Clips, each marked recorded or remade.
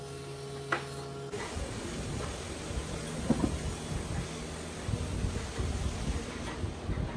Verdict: recorded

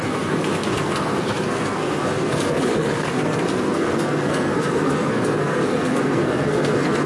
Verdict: remade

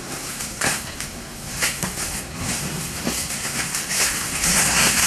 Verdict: remade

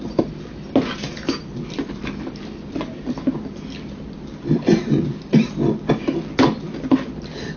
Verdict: recorded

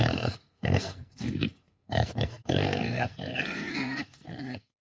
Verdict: remade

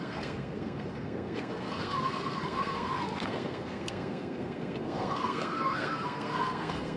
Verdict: remade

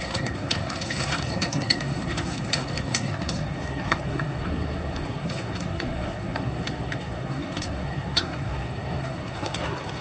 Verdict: remade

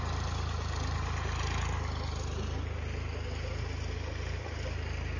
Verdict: recorded